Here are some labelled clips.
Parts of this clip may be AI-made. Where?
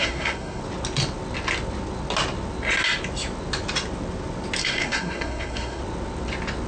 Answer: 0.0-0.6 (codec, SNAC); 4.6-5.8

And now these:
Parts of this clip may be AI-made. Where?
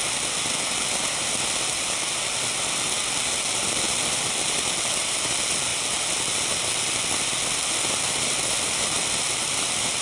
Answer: none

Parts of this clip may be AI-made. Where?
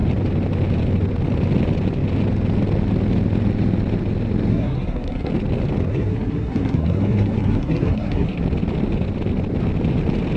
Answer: 4.5-5.3 (codec, SNAC); 5.9-8.4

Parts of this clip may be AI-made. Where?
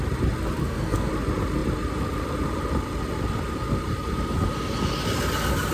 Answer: 0.6-1.1 (codec, SNAC)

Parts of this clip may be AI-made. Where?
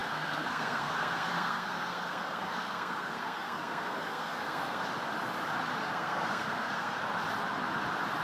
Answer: 0.0-4.8 (codec, SNAC); 5.8-7.0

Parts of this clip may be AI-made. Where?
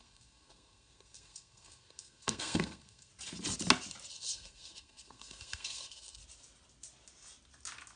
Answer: 0.0-3.1 (codec, SNAC); 4.1-6.2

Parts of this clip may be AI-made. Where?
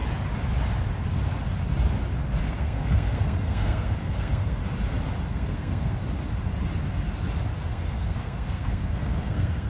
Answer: 2.4-4.6 (codec, SNAC); 5.3-6.0; 7.7-9.7